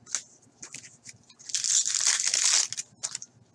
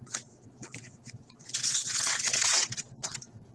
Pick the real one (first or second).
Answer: first